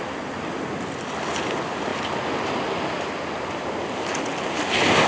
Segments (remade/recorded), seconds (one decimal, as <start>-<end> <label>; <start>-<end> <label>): 0.0-5.1 recorded